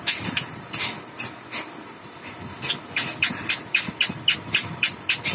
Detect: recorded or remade recorded